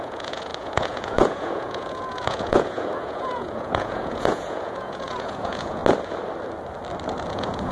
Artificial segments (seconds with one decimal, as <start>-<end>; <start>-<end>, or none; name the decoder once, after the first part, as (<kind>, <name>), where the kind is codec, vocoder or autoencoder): 0.0-5.8 (vocoder, Vocos); 7.3-7.7

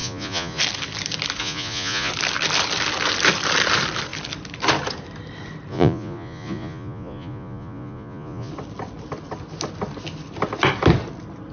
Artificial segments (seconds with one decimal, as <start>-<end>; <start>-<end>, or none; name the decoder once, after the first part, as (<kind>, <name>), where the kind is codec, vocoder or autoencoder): 0.0-0.6 (vocoder, Vocos); 1.4-2.1; 5.7-8.5

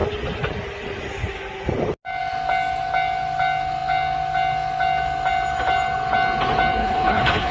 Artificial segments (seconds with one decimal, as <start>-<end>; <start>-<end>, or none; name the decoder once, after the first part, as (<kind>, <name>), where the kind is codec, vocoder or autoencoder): 6.8-7.5 (codec, HILCodec)

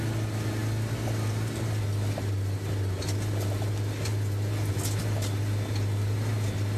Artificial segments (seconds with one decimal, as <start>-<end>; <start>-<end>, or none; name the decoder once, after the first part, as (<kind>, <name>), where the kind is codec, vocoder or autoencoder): none

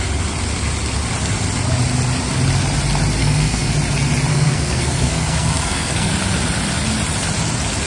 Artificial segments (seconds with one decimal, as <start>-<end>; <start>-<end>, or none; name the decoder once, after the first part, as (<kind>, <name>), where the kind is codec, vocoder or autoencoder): 3.2-3.7 (codec, SNAC); 4.3-6.1